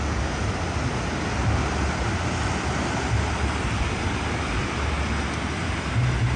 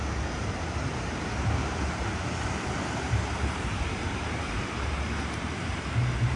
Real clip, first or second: first